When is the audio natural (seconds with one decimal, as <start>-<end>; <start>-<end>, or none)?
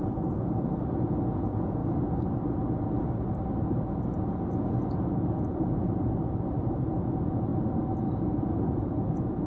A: 1.8-4.5; 7.5-8.4